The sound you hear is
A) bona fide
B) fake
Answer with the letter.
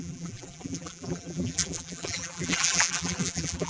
B